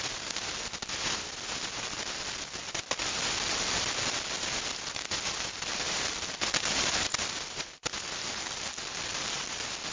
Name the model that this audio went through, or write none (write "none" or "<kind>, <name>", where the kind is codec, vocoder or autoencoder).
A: none